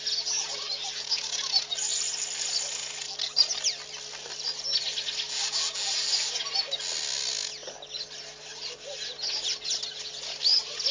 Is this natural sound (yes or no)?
yes